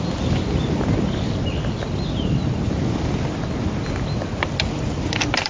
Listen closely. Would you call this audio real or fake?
real